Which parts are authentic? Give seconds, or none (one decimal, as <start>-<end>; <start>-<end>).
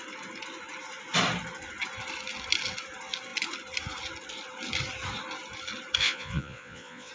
0.0-6.0